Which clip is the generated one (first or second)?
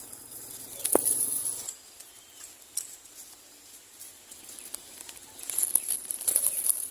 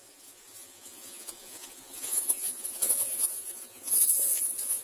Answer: second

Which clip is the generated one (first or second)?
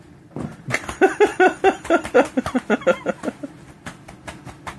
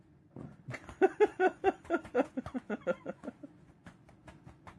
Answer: second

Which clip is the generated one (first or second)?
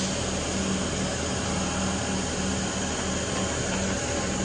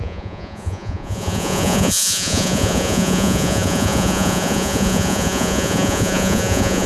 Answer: second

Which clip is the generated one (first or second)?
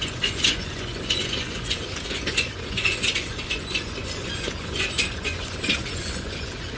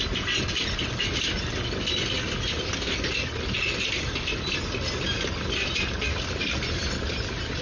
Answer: first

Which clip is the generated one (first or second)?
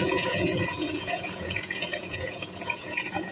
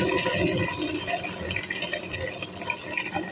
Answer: first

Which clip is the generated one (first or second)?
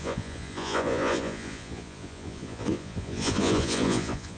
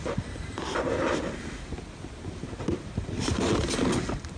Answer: first